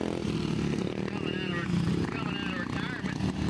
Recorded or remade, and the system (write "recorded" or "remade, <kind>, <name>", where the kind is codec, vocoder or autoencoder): recorded